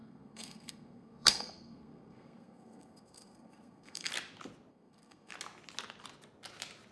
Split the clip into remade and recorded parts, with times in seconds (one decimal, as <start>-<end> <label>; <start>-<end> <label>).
0.0-4.1 remade; 4.1-4.7 recorded; 4.7-5.3 remade; 5.3-6.9 recorded

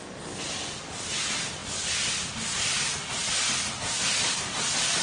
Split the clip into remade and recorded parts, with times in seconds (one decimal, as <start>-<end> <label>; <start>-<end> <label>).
0.0-5.0 recorded

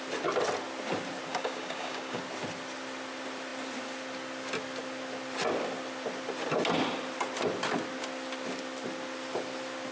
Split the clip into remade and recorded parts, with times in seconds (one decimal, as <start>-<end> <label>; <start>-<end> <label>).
0.0-1.3 recorded; 1.3-2.2 remade; 2.2-9.9 recorded

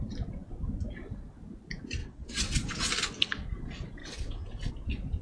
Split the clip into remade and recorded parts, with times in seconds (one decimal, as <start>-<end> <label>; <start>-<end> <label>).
0.0-2.0 recorded; 2.0-2.9 remade; 2.9-4.0 recorded; 4.0-4.7 remade; 4.7-5.2 recorded

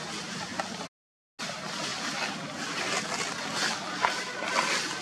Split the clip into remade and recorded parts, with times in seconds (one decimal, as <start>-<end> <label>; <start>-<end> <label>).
0.0-5.0 recorded

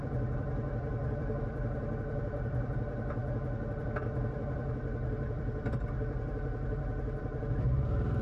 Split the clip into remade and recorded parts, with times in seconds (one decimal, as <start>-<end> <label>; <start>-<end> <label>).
0.0-3.2 remade; 3.2-3.8 recorded; 3.8-8.2 remade

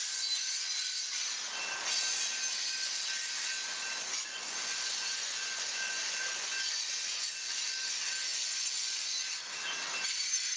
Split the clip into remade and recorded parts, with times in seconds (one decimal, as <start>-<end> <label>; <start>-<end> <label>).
0.0-4.1 recorded; 4.1-7.7 remade; 7.7-8.3 recorded; 8.3-9.2 remade; 9.2-10.6 recorded